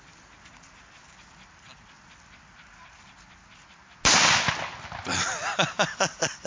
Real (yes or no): yes